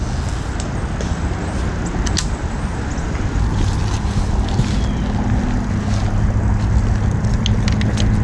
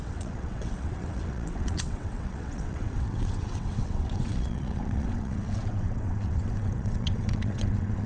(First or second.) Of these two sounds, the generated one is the second